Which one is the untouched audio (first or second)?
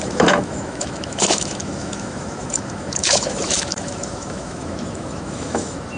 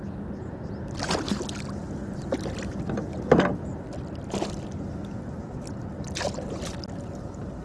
second